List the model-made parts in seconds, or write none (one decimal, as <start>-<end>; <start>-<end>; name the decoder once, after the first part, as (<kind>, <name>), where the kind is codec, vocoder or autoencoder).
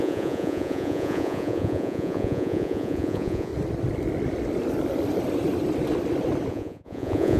0.0-3.5 (vocoder, Vocos); 6.5-7.4